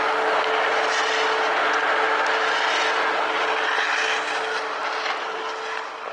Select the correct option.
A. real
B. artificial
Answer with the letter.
A